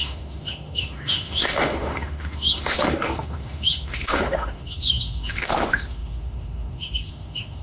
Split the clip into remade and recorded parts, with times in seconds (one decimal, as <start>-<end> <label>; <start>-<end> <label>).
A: 0.0-7.6 remade